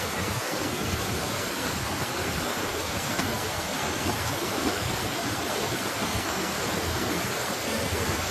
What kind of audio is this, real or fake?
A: fake